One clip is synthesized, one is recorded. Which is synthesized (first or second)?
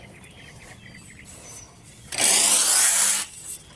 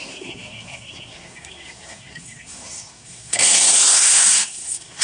second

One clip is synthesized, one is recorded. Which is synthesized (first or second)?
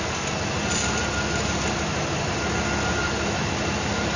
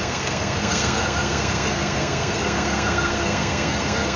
second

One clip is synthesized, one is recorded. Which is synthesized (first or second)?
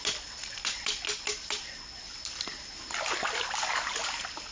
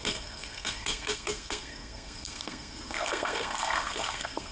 second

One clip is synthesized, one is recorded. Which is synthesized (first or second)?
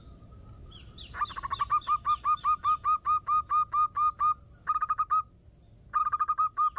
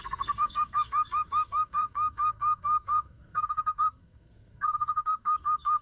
second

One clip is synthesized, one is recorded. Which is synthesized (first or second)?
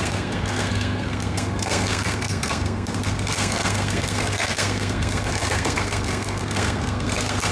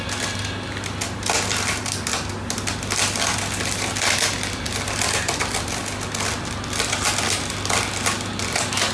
first